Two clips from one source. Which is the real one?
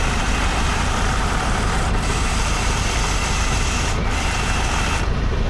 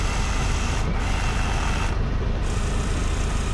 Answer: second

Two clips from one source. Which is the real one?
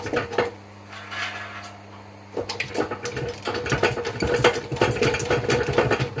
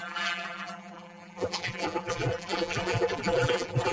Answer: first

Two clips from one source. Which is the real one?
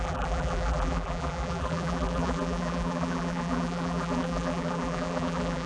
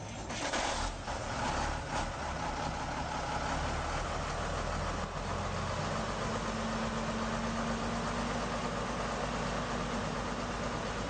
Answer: second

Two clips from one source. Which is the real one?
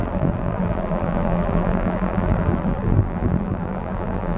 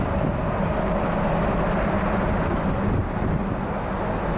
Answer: second